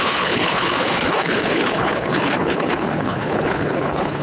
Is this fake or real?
fake